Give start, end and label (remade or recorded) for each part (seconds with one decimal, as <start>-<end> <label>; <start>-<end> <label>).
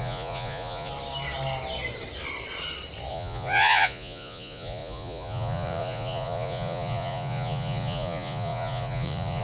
0.0-0.9 remade; 0.9-3.1 recorded; 3.1-9.4 remade